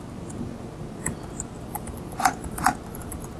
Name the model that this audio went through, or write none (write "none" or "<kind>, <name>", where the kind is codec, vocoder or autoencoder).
none